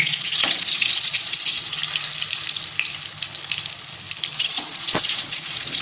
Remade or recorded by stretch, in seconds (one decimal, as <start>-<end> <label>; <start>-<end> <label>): 0.0-1.8 remade; 1.8-4.4 recorded; 4.4-5.8 remade